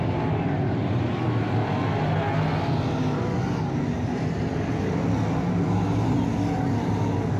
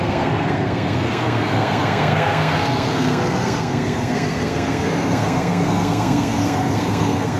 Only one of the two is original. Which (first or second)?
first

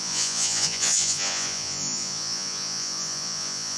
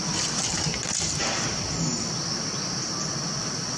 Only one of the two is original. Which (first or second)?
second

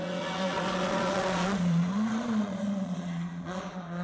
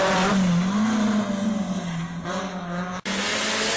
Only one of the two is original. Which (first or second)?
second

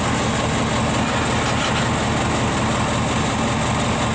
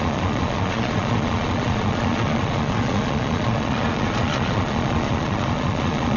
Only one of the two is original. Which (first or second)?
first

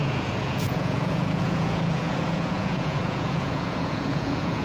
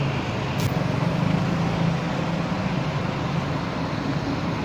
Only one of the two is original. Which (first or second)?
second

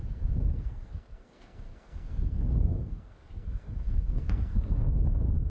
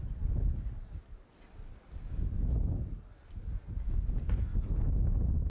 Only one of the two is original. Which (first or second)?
second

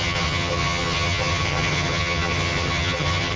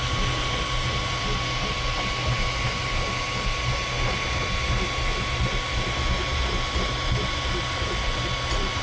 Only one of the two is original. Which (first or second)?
second